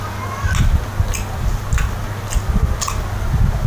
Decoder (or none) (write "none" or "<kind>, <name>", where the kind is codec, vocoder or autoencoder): none